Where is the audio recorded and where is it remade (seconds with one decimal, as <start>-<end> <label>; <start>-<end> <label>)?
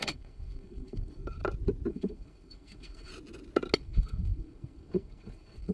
0.0-1.4 remade; 1.4-1.9 recorded; 1.9-3.1 remade; 3.1-3.8 recorded; 3.8-5.7 remade